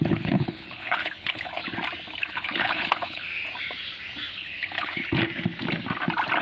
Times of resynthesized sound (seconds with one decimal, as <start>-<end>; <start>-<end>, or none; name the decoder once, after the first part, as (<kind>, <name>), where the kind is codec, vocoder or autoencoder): 0.0-1.6 (codec, HILCodec); 2.3-3.3; 4.3-5.0